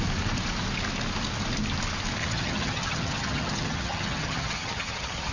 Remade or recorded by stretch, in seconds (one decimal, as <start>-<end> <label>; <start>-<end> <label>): 0.0-2.2 recorded; 2.2-5.3 remade